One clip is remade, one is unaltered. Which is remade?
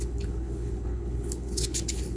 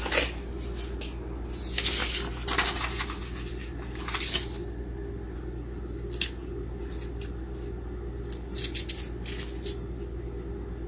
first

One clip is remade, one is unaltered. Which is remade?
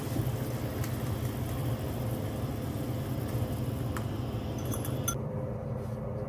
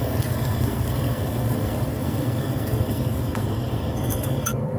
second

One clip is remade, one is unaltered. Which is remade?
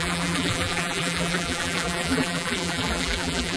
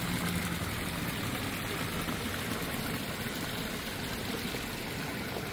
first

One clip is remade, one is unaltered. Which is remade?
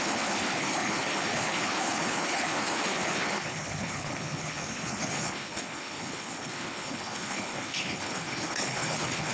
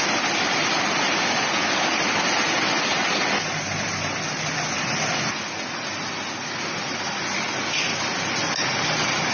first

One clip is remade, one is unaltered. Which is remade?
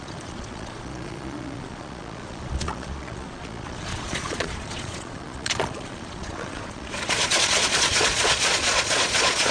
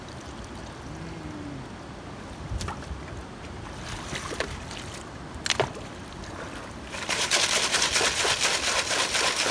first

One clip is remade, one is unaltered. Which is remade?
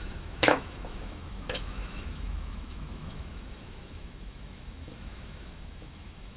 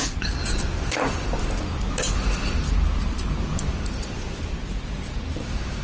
first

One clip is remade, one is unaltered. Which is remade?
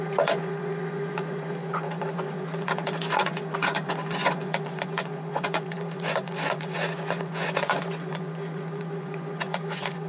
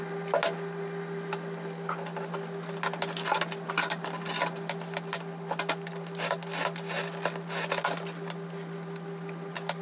first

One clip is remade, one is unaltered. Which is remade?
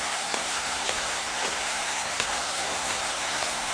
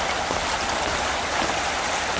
first